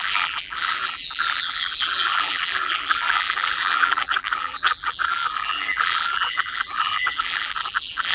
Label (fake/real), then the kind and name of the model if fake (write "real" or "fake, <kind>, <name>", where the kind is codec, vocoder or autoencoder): fake, vocoder, BigVGAN v2